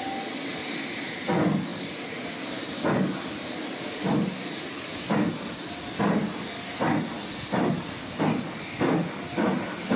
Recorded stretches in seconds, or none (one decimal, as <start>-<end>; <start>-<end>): 0.0-10.0